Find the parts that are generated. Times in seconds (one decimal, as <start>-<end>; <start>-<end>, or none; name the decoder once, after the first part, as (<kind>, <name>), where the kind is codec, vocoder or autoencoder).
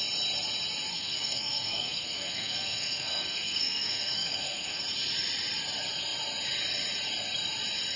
0.9-4.8 (codec, SNAC)